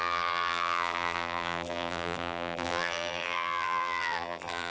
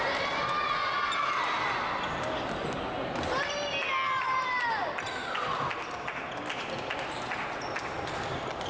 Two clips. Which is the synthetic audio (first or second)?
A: first